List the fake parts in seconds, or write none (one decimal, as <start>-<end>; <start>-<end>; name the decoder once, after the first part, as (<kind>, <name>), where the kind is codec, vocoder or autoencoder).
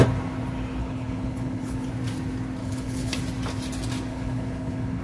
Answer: 0.8-1.9 (codec, HILCodec); 2.6-3.2; 4.1-5.0